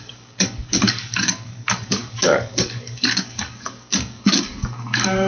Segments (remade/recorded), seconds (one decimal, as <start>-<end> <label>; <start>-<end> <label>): 0.0-5.3 remade